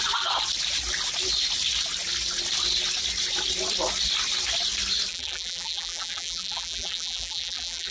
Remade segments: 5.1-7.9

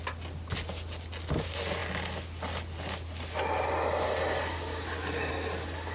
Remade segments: none

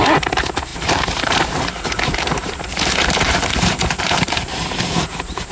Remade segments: 0.0-5.5

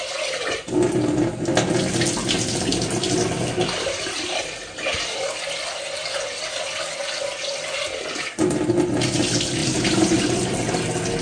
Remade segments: 9.6-10.2

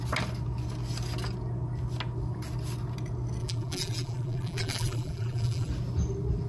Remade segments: 3.4-5.7

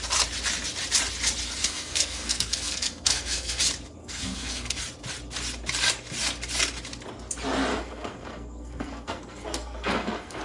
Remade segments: 1.6-3.6; 4.0-4.8; 7.7-10.4

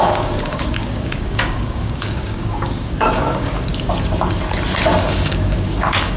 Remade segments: 0.0-3.7; 5.1-6.2

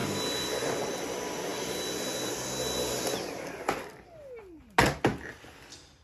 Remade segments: none